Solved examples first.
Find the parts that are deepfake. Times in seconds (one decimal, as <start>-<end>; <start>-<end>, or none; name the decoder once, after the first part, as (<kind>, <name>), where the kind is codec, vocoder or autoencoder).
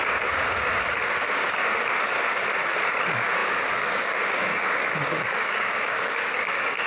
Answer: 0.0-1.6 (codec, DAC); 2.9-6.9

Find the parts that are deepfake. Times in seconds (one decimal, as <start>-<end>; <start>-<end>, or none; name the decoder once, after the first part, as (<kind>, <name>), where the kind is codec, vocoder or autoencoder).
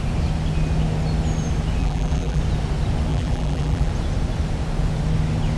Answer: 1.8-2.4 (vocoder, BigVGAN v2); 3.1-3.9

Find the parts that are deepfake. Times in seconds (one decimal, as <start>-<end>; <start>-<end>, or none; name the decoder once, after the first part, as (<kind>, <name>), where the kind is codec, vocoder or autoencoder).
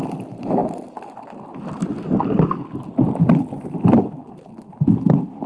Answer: none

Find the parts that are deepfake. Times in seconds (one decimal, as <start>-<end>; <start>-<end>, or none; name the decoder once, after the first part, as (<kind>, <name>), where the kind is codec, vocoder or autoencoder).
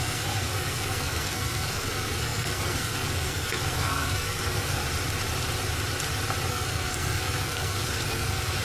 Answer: 0.0-4.8 (codec, SNAC); 6.5-8.6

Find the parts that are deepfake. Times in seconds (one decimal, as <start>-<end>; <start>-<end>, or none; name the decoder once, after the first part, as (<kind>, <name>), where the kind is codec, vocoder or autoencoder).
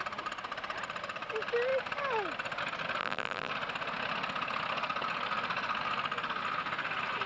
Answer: 3.0-3.5 (vocoder, BigVGAN v2)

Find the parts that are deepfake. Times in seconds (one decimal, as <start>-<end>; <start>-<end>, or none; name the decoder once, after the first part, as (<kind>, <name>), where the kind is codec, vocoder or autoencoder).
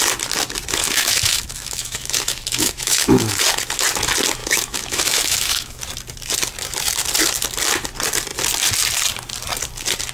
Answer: 0.8-3.4 (autoencoder, DAC-VAE); 4.4-5.8